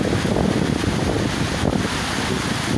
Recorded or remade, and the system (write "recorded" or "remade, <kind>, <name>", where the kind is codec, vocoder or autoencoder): recorded